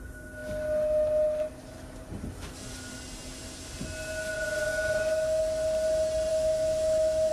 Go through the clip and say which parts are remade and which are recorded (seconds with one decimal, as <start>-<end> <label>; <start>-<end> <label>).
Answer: 0.0-4.7 recorded; 4.7-5.4 remade; 5.4-6.3 recorded; 6.3-7.3 remade